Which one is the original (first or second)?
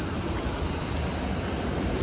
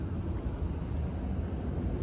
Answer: second